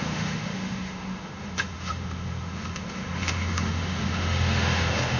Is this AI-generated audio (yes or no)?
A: yes